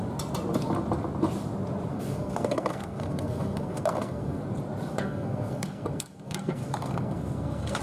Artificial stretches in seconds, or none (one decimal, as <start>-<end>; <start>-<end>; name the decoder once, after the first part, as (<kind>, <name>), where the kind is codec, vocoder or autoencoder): 1.9-4.4 (codec, SNAC); 4.9-7.8